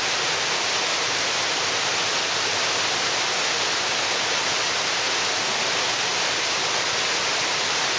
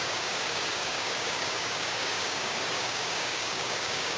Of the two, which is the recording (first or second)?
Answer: first